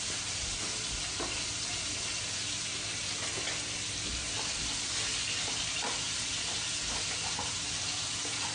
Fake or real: real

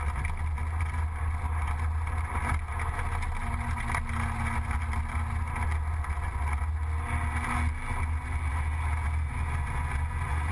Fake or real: real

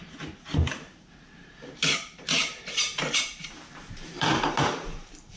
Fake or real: fake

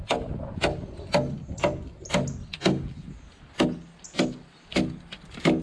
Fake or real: real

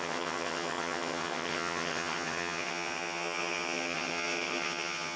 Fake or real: fake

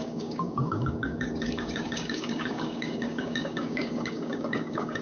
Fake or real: fake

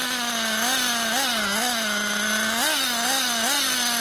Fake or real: real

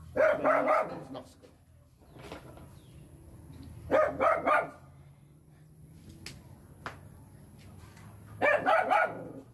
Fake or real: real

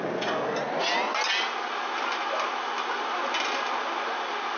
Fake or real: real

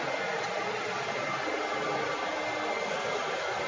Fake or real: real